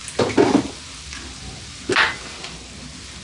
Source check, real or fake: real